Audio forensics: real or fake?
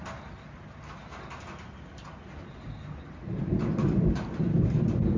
real